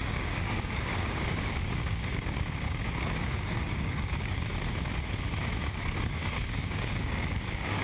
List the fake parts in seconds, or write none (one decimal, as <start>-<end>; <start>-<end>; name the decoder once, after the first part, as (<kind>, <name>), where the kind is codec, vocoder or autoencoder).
0.0-4.5 (codec, DAC); 5.6-7.8